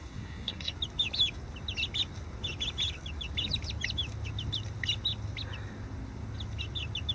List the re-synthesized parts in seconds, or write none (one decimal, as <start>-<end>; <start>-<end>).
0.0-0.7